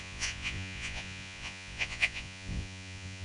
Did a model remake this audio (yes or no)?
yes